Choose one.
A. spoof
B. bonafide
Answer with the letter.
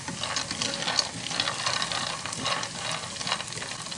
B